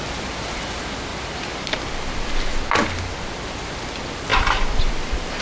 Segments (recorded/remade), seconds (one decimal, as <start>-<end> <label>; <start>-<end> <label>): 0.0-1.1 recorded; 1.1-1.8 remade; 1.8-4.3 recorded; 4.3-5.4 remade